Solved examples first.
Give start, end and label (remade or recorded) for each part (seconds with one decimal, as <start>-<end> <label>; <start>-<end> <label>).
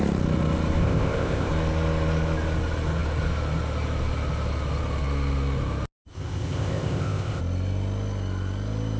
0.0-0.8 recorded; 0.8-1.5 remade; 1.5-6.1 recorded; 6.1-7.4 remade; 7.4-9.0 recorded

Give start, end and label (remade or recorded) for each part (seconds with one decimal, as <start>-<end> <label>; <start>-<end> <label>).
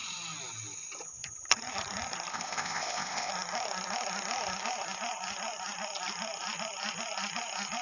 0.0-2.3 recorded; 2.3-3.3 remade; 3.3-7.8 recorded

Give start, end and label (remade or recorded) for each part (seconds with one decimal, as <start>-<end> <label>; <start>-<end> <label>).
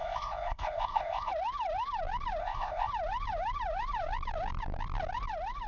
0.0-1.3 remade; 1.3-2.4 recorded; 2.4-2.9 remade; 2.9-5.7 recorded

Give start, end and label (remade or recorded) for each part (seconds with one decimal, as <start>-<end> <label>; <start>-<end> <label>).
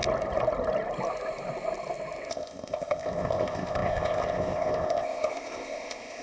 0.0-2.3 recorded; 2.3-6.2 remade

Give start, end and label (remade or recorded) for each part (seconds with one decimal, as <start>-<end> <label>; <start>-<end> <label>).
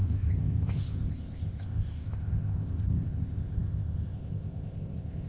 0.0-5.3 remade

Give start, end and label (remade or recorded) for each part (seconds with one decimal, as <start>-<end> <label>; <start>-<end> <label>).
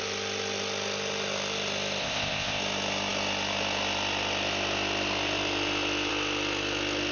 0.0-2.0 recorded; 2.0-2.6 remade; 2.6-7.1 recorded